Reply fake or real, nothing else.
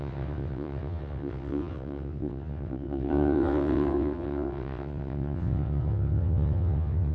fake